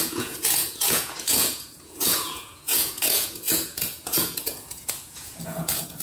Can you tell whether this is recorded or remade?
remade